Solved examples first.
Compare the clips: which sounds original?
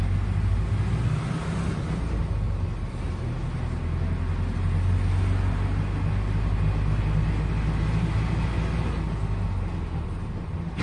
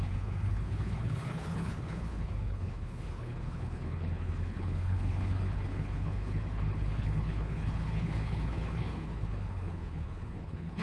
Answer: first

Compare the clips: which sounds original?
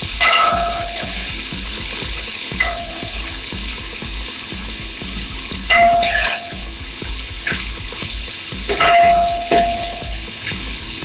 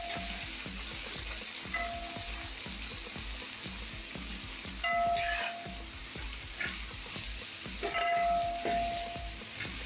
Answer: second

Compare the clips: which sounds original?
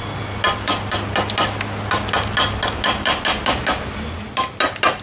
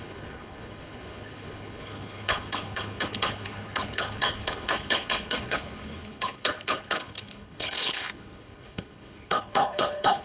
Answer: first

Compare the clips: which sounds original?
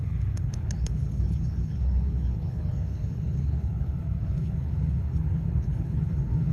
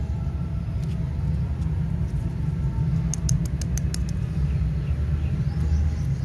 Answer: second